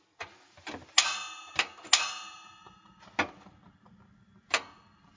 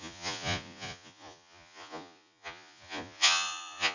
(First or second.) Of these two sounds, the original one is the first